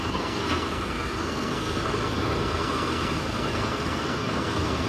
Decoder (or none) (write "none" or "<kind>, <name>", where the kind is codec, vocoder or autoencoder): codec, SNAC